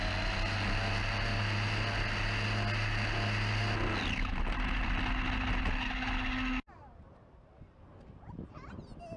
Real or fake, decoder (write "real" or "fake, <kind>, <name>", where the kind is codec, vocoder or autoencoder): real